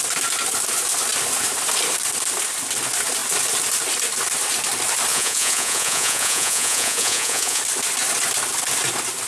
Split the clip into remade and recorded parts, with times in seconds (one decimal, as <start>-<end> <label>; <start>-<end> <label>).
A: 0.0-5.1 recorded; 5.1-7.6 remade; 7.6-9.3 recorded